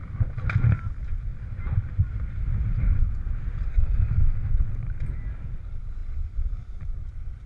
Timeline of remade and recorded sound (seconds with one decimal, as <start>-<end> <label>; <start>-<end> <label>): 0.0-3.7 recorded; 3.7-4.6 remade; 4.6-7.5 recorded